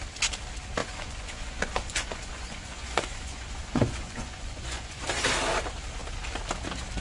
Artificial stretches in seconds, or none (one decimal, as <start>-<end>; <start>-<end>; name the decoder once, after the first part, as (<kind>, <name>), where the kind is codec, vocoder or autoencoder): 0.8-5.0 (vocoder, Vocos)